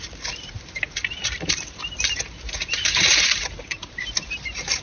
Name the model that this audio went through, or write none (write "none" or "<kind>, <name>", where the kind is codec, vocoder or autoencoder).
vocoder, BigVGAN v2